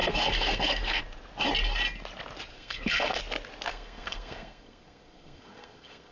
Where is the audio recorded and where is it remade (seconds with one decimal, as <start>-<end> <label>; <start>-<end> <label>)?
0.0-1.0 remade; 1.0-2.5 recorded; 2.5-3.2 remade; 3.2-3.7 recorded; 3.7-6.1 remade